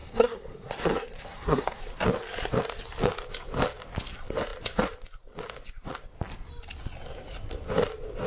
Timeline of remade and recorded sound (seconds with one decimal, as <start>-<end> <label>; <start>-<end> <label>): 0.0-1.8 remade; 1.8-8.3 recorded